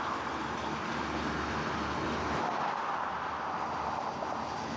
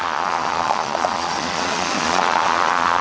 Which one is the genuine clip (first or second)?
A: first